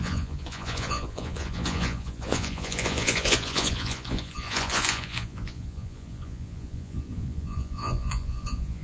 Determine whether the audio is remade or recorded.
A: remade